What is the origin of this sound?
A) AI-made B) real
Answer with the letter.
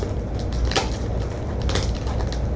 B